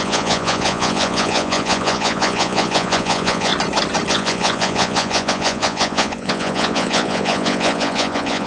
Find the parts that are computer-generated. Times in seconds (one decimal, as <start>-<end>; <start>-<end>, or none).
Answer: 0.0-3.5; 4.1-8.5